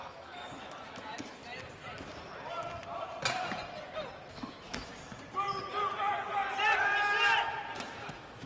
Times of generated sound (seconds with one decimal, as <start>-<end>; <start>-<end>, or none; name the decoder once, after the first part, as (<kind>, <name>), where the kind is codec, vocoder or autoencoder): 0.0-1.4 (autoencoder, DAC-VAE); 4.3-4.9; 7.8-8.5